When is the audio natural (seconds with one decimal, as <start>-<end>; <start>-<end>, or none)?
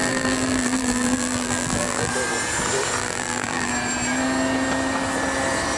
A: 2.1-3.0; 3.7-5.8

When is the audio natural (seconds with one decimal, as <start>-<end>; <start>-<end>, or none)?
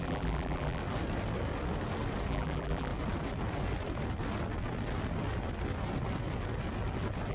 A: 0.8-2.3; 2.9-7.3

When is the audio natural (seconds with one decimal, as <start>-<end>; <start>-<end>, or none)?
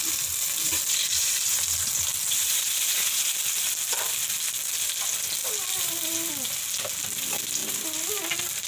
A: 0.0-5.4; 6.3-7.6; 8.1-8.7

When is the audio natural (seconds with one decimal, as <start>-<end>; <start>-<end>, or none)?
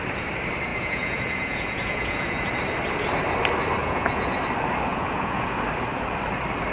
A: 0.0-0.7; 2.5-3.8; 4.4-4.9; 5.5-6.7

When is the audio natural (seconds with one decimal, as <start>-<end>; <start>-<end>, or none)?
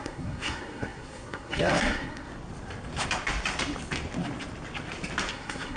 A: 2.3-5.3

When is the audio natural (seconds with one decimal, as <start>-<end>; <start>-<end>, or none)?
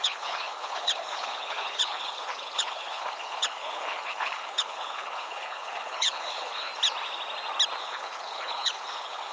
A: 6.7-7.8